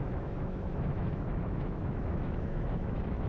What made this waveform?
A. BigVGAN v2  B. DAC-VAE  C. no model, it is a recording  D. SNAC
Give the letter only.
B